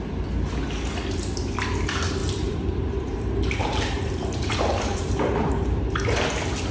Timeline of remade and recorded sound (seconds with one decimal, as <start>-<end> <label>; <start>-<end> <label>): 0.0-2.2 recorded; 2.2-6.2 remade; 6.2-6.7 recorded